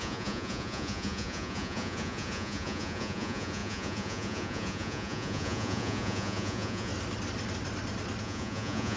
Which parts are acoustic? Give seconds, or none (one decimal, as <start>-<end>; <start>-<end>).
6.9-8.2